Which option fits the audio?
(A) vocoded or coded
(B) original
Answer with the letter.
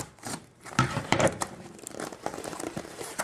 A